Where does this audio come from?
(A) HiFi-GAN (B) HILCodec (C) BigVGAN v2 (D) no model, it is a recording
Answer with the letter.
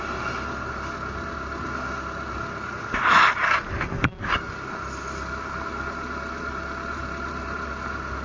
D